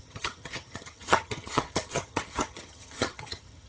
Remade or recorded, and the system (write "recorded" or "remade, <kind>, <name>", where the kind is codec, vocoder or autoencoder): remade, vocoder, HiFi-GAN